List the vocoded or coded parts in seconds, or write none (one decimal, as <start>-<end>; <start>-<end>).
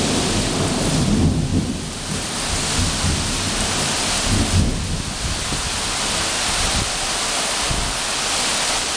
1.5-2.3; 7.7-9.0